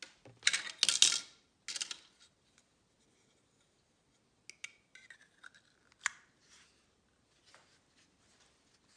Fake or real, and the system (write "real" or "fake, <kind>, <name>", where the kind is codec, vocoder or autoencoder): real